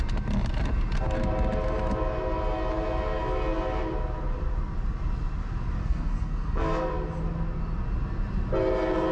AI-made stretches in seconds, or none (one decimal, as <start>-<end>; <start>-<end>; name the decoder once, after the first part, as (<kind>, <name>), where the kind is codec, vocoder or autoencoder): 5.8-6.9 (codec, SNAC)